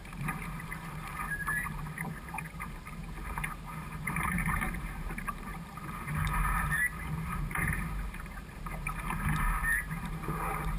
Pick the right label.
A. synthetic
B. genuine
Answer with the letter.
A